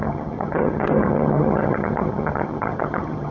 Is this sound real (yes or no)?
no